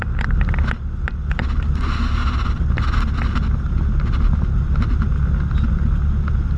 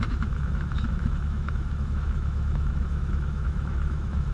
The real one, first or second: first